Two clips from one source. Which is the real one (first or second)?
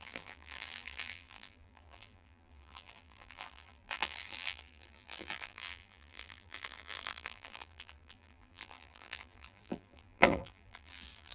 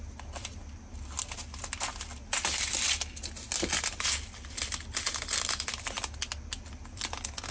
second